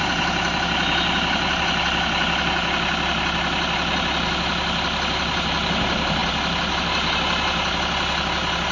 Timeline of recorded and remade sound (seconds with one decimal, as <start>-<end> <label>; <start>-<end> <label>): 0.0-8.7 recorded